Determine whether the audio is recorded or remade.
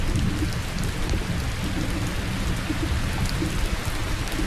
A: recorded